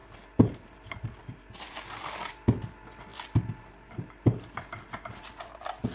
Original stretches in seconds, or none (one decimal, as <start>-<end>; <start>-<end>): 0.0-5.9